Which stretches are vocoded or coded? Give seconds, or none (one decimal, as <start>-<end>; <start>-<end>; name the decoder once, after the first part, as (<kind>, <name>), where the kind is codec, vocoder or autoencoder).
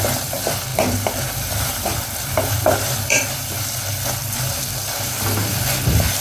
0.0-6.2 (vocoder, BigVGAN v2)